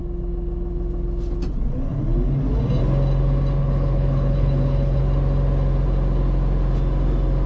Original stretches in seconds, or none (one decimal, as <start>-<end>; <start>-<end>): 0.0-3.6; 5.0-7.5